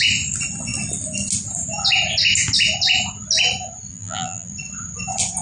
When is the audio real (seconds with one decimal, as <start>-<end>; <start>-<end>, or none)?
0.0-3.9; 4.5-5.4